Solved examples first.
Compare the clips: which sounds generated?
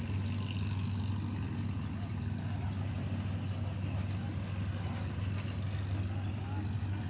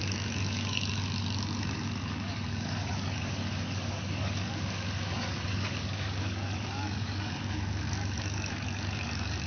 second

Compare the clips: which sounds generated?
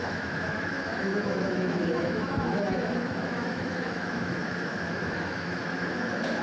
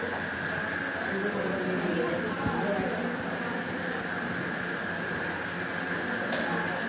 first